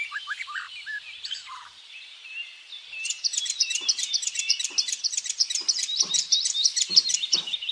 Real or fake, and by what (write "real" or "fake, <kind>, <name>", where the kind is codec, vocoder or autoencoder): fake, vocoder, BigVGAN v2